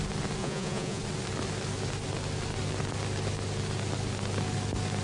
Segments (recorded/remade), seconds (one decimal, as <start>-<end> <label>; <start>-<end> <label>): 0.0-0.4 recorded; 0.4-1.0 remade; 1.0-5.0 recorded